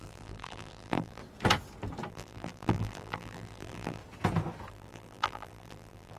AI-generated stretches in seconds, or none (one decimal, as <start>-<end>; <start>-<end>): 0.0-1.2; 2.1-4.0; 4.7-6.2